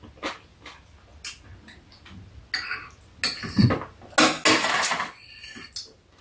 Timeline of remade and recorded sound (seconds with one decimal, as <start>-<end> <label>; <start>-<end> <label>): 0.0-6.2 recorded